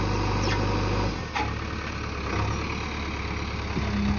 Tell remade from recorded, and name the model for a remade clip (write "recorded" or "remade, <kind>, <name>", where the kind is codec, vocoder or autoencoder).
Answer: recorded